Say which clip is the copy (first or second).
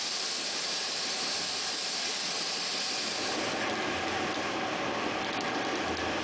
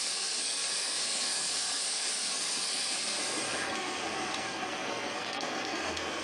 second